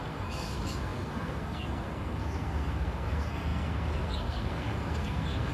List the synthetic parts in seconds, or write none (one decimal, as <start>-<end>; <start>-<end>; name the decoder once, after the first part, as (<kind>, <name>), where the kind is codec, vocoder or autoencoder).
0.0-5.5 (codec, SNAC)